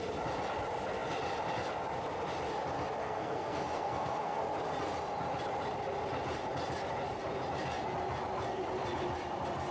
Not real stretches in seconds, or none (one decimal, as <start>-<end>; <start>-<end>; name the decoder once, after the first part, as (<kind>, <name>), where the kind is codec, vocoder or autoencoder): 3.0-4.4 (codec, SNAC)